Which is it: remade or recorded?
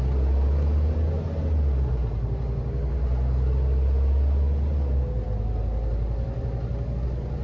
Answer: recorded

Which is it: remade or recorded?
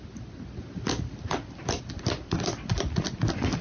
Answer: recorded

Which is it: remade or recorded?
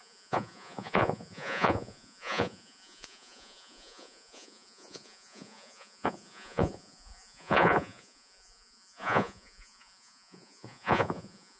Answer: remade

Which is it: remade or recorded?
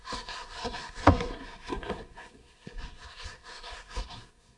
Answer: remade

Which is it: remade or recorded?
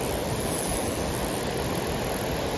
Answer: recorded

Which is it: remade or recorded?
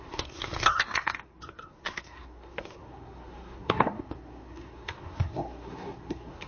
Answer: remade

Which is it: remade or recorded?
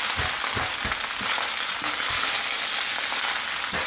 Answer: recorded